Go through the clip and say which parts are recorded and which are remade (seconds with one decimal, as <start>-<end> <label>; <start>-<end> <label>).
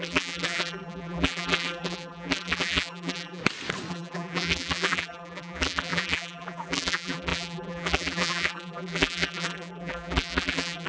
0.0-3.4 remade; 3.4-3.9 recorded; 3.9-10.9 remade